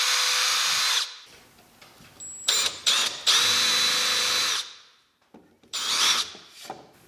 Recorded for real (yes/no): yes